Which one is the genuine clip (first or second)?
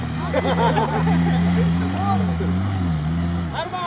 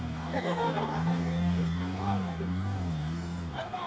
first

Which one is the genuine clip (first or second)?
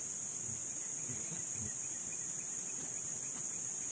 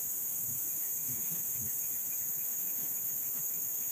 first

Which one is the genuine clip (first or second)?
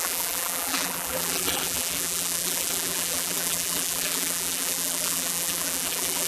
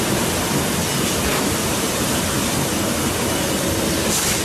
second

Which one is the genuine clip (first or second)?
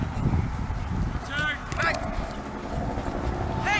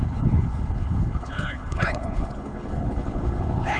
first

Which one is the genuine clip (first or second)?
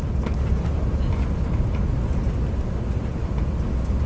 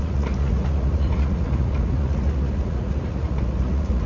first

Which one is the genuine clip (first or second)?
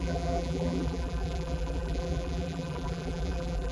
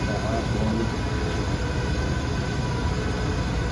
second